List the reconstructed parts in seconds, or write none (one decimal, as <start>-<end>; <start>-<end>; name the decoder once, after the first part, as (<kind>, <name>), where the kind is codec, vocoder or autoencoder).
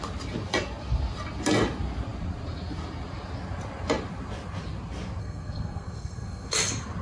5.2-6.5 (codec, SNAC)